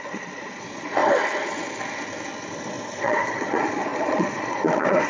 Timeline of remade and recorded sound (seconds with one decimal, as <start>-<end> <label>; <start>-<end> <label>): 0.0-1.0 remade; 1.0-3.0 recorded; 3.0-5.1 remade